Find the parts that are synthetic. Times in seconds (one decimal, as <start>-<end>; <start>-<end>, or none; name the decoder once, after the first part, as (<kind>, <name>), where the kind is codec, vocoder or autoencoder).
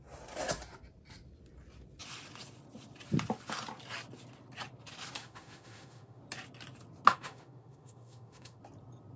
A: 5.2-6.2 (autoencoder, DAC-VAE); 7.1-8.6